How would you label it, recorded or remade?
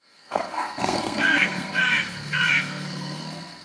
remade